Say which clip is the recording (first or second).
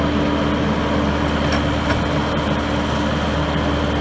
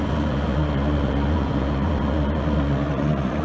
first